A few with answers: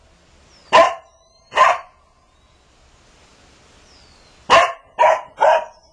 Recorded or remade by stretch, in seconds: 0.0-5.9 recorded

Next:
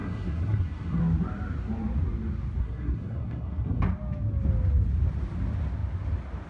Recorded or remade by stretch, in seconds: 0.0-1.0 remade; 1.0-2.6 recorded; 2.6-3.8 remade; 3.8-6.5 recorded